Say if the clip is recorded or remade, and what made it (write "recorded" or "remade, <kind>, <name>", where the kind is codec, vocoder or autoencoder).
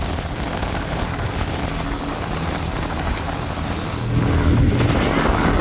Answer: recorded